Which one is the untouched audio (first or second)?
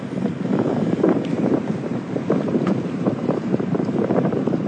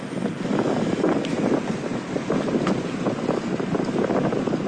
second